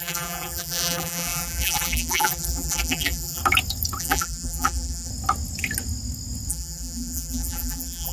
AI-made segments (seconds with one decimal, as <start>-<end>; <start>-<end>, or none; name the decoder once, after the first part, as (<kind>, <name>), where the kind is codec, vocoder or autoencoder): 0.0-3.4 (vocoder, BigVGAN v2); 4.0-5.1; 6.5-8.1